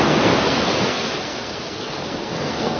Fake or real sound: fake